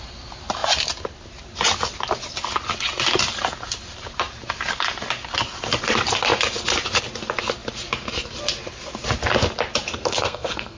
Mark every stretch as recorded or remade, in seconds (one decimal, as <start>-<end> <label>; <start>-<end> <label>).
0.0-9.9 recorded; 9.9-10.8 remade